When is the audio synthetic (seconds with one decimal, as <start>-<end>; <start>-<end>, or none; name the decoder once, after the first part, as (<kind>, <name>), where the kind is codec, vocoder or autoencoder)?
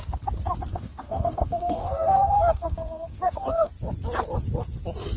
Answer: 0.7-3.7 (codec, SNAC)